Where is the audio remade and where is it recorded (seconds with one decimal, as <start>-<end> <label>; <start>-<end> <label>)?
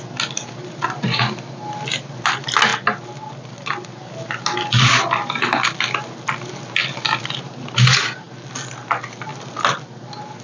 0.0-10.4 recorded